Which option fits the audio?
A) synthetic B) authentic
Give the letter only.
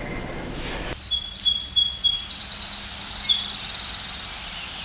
B